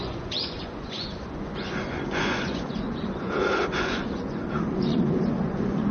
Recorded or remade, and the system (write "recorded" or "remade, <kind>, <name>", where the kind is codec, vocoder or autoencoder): remade, vocoder, Vocos